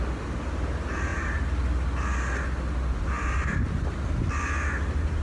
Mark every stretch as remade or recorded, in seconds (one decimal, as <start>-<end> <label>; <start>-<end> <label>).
0.0-5.2 recorded